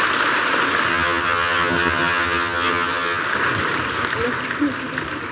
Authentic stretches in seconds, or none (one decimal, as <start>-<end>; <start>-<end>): 0.0-0.9; 3.2-5.3